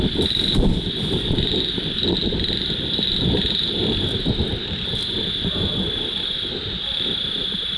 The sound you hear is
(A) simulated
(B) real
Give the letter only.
B